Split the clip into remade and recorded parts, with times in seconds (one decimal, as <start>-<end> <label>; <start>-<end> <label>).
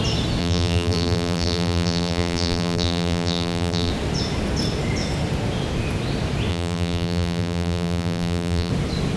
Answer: 0.0-0.4 recorded; 0.4-3.9 remade; 3.9-6.5 recorded; 6.5-8.7 remade; 8.7-9.2 recorded